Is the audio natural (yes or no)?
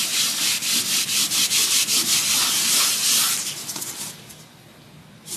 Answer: yes